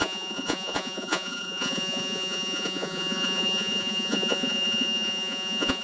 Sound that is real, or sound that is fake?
fake